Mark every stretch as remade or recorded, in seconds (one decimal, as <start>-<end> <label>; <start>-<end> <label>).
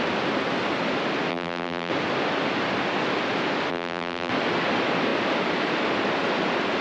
0.0-1.3 recorded; 1.3-1.9 remade; 1.9-3.7 recorded; 3.7-4.3 remade; 4.3-6.8 recorded